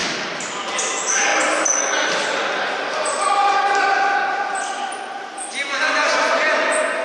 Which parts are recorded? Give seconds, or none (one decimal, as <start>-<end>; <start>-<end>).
0.0-7.0

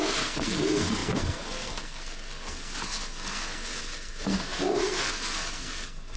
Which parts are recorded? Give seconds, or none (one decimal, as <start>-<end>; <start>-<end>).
none

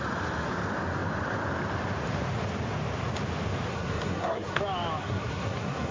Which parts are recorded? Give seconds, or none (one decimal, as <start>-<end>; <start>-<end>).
0.0-3.7; 4.6-5.0

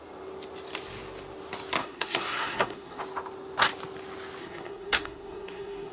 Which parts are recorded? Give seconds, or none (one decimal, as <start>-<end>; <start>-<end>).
0.0-1.8; 3.0-4.4

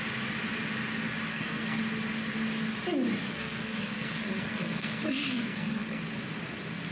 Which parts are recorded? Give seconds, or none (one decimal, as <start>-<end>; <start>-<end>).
0.0-1.3; 1.8-3.2; 6.0-6.9

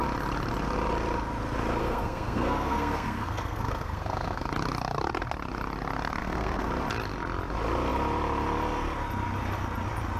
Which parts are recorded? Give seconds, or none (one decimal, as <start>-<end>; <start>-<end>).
0.0-1.8; 4.5-6.2; 6.7-10.2